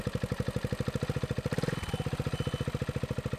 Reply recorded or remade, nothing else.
recorded